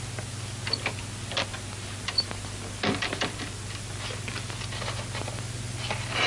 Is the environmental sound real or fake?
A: real